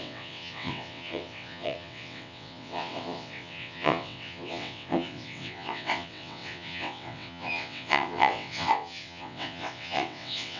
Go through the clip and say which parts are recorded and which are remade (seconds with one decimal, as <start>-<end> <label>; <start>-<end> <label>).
0.0-10.6 remade